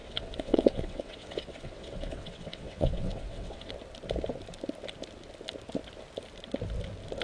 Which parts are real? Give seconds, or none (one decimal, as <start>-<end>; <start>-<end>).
3.7-7.2